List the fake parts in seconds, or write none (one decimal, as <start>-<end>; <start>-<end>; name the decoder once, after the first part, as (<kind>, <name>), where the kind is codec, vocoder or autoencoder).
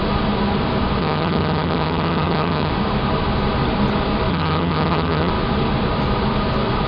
1.0-2.7 (vocoder, HiFi-GAN); 4.3-5.3